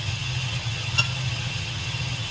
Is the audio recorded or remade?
remade